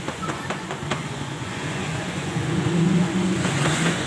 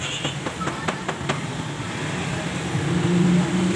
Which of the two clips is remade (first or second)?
first